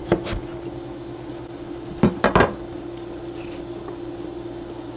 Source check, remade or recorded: recorded